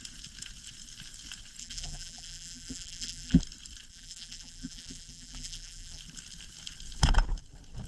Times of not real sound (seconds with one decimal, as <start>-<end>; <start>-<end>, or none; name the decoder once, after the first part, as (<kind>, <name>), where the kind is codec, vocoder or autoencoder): 1.6-3.4 (vocoder, BigVGAN v2); 3.9-6.0